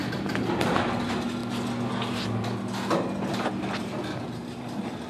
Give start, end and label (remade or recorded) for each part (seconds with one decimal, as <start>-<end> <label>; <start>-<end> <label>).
0.0-5.1 recorded